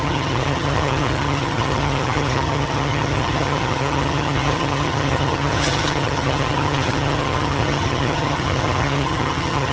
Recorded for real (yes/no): no